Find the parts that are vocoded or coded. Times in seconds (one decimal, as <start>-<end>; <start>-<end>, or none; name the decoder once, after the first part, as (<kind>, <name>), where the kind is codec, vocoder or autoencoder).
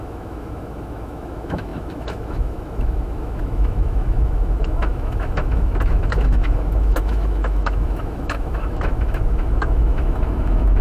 0.0-10.8 (autoencoder, DAC-VAE)